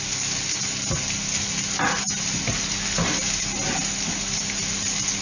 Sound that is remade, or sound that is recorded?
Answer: recorded